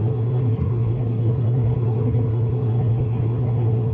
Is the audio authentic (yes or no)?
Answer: no